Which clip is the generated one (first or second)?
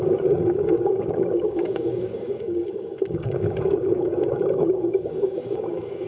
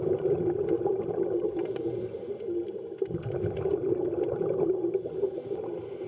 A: first